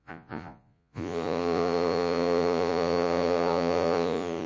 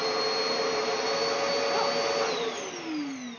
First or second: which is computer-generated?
first